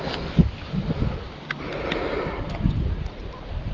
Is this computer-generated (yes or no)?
no